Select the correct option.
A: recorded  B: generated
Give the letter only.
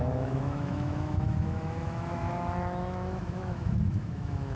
B